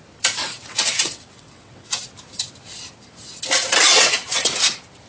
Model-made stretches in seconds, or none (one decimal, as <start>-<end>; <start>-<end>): 0.4-2.0; 3.9-4.5